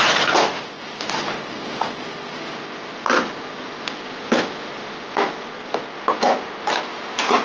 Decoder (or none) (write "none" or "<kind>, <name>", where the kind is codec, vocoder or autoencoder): none